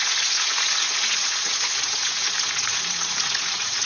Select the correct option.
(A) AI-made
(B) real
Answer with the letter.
A